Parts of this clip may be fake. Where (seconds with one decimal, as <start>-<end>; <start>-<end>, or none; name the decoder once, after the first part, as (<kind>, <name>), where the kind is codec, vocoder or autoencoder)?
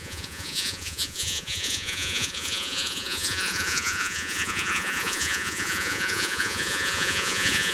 0.0-7.7 (vocoder, Vocos)